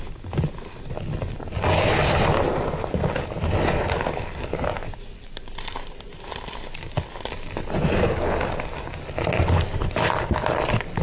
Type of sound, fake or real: real